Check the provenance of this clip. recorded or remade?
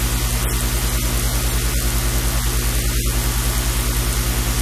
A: recorded